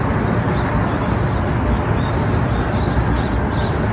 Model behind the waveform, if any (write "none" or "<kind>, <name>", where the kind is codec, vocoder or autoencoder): none